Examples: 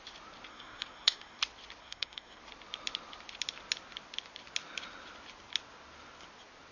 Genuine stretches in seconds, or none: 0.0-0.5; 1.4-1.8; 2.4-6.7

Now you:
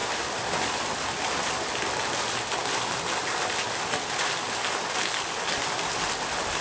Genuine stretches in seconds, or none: 2.0-6.6

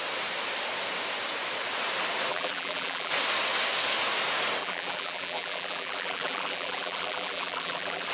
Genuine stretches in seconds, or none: 0.0-2.3; 3.1-4.6

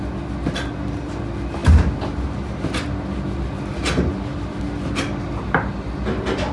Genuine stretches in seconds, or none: 0.0-6.5

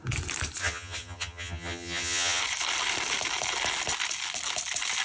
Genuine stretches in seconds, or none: 0.0-0.6; 2.4-5.0

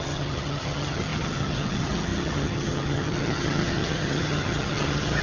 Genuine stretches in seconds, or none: none

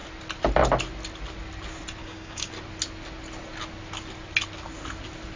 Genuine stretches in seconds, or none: 0.0-2.0; 2.5-5.4